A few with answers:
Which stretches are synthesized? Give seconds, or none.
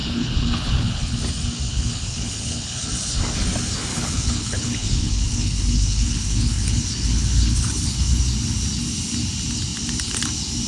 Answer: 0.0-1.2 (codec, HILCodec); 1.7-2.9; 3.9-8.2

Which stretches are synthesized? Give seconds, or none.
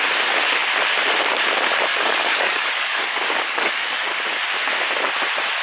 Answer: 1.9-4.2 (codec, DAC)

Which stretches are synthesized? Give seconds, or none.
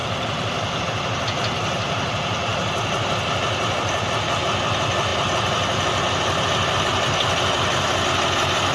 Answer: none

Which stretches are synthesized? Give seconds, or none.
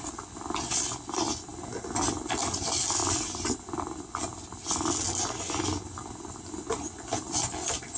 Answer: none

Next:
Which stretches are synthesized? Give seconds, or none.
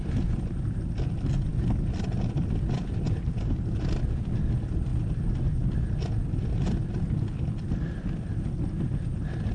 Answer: none